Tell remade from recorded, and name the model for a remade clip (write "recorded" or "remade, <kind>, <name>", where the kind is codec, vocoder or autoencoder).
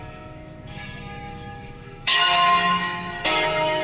remade, autoencoder, DAC-VAE